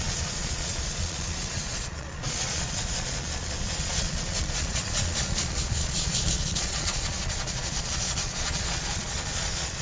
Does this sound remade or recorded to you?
remade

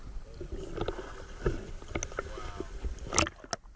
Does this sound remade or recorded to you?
recorded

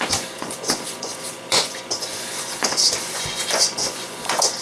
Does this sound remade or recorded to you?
remade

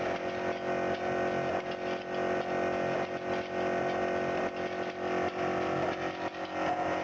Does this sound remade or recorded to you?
recorded